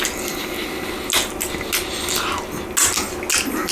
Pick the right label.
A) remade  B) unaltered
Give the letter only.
B